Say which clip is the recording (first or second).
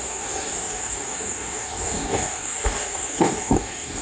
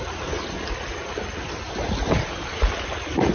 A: second